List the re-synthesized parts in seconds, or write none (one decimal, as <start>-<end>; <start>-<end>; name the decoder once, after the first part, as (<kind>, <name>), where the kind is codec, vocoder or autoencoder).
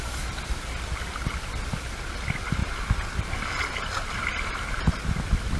none